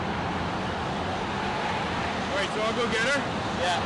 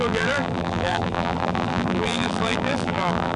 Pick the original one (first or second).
first